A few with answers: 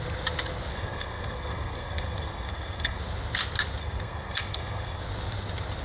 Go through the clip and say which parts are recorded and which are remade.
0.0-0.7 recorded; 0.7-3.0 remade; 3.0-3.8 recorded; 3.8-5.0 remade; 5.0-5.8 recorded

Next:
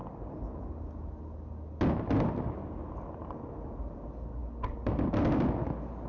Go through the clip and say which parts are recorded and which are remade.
0.0-6.1 recorded